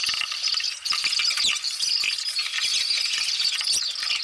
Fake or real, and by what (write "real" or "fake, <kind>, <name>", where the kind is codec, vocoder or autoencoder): real